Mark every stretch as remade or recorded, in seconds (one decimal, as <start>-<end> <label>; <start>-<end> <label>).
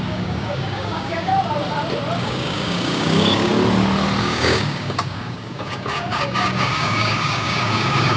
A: 0.0-1.3 remade; 1.3-2.2 recorded; 2.2-3.5 remade; 3.5-4.2 recorded; 4.2-8.2 remade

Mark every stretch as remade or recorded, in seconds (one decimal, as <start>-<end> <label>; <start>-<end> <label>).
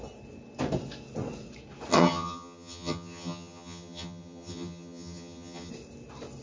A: 0.0-1.9 recorded; 1.9-5.7 remade; 5.7-6.4 recorded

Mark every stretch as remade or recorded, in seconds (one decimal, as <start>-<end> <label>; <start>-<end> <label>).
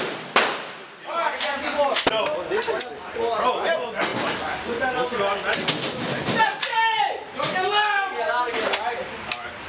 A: 0.0-9.7 recorded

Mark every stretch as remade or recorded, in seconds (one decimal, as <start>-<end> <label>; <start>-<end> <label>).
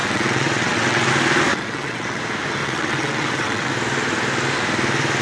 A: 0.0-1.1 remade; 1.1-1.5 recorded; 1.5-2.2 remade; 2.2-2.6 recorded; 2.6-3.7 remade; 3.7-5.2 recorded